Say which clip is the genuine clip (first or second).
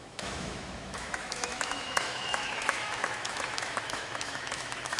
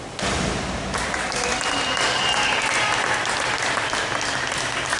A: second